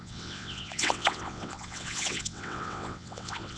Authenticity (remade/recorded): remade